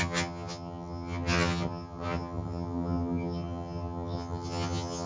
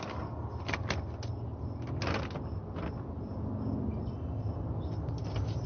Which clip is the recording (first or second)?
second